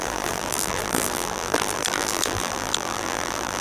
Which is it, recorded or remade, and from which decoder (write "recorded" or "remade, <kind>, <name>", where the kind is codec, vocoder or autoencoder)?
remade, vocoder, BigVGAN v2